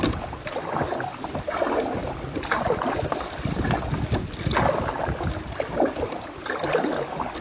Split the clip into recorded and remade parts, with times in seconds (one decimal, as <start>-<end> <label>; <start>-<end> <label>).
0.0-7.4 recorded